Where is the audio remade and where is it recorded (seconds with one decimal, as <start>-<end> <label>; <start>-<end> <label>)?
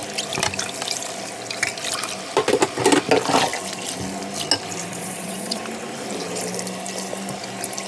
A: 0.0-4.9 recorded; 4.9-5.6 remade; 5.6-7.9 recorded